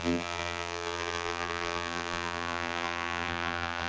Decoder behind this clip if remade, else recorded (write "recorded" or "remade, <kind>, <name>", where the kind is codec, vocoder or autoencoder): remade, vocoder, BigVGAN v2